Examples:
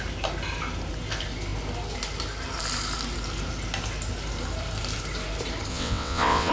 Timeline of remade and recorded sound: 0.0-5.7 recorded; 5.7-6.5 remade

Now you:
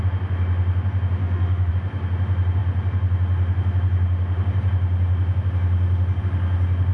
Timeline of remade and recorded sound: 0.0-1.2 recorded; 1.2-1.7 remade; 1.7-6.9 recorded

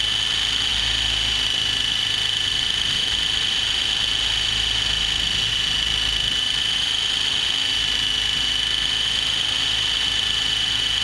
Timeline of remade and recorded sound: 0.0-11.0 recorded